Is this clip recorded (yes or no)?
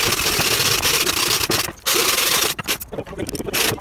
yes